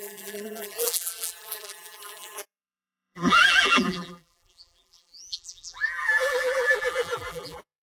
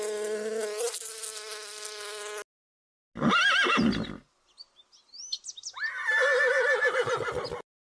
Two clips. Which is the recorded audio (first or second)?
second